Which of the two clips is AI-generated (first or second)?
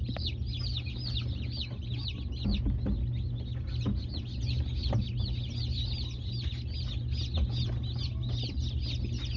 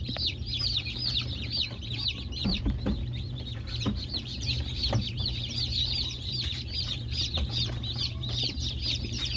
second